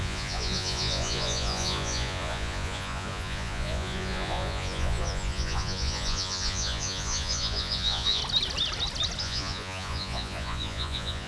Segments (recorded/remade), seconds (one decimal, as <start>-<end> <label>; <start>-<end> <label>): 0.0-8.2 remade; 8.2-9.2 recorded; 9.2-11.3 remade